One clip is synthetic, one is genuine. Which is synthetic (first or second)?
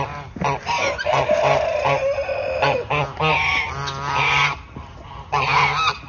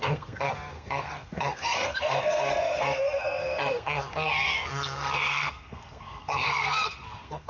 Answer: second